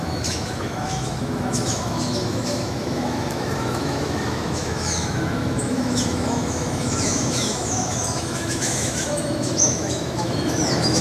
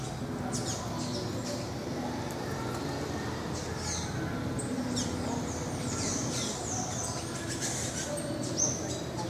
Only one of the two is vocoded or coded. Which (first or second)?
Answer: first